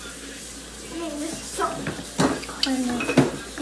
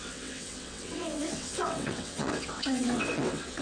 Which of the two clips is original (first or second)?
first